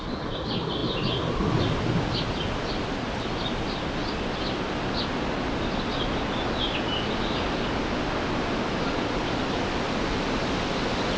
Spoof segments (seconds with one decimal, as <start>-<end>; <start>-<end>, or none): none